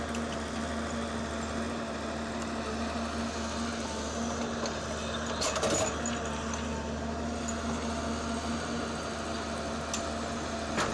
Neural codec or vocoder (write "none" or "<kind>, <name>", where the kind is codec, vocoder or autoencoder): none